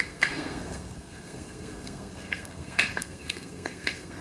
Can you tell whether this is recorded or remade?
remade